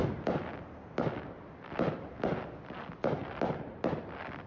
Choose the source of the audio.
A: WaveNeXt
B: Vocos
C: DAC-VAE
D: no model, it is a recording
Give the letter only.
D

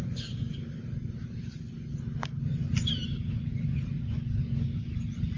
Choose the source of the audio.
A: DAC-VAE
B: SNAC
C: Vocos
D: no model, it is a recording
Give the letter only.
D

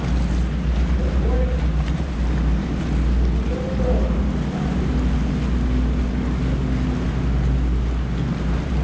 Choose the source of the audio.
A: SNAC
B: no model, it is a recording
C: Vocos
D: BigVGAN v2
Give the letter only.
B